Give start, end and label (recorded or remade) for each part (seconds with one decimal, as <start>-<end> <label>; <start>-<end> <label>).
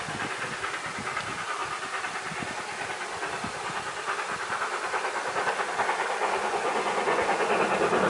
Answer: 0.0-6.2 recorded; 6.2-7.5 remade; 7.5-8.1 recorded